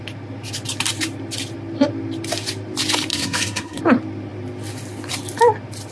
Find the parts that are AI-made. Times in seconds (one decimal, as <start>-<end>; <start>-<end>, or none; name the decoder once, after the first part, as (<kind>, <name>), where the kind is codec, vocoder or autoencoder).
3.1-3.8 (codec, SNAC)